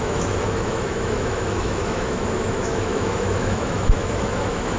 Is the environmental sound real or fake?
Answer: fake